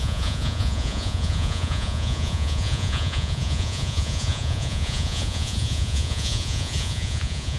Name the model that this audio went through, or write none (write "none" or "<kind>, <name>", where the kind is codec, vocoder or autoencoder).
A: vocoder, Vocos